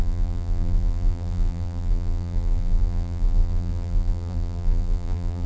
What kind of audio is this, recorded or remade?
remade